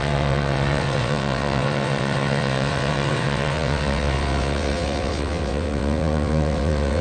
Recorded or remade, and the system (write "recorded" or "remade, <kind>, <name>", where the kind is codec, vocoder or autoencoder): remade, vocoder, WaveNeXt